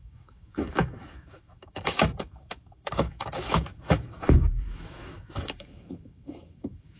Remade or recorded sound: remade